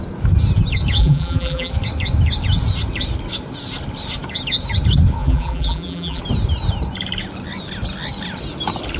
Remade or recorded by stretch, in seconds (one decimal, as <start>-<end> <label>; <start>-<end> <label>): 0.0-1.0 recorded; 1.0-1.7 remade; 1.7-5.2 recorded; 5.2-6.2 remade; 6.2-9.0 recorded